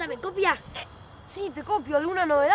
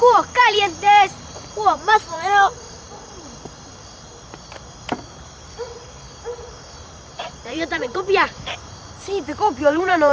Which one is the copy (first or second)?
second